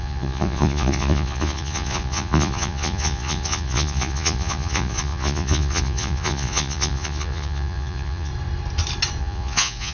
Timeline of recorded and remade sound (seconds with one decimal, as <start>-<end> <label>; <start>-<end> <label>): 0.0-8.3 remade; 8.3-9.2 recorded; 9.2-9.9 remade